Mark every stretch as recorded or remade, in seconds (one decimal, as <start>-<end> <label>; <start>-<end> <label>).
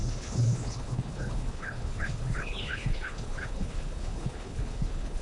0.0-5.2 remade